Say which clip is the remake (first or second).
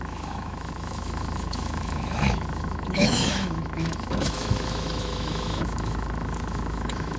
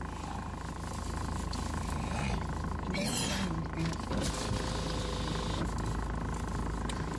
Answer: first